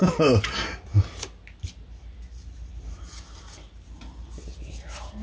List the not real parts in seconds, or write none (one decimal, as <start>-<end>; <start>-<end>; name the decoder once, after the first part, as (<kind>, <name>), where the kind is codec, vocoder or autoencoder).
none